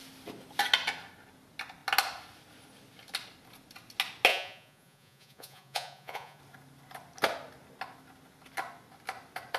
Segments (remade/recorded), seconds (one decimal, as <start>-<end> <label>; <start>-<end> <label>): 0.0-4.3 recorded; 4.3-6.4 remade; 6.4-9.6 recorded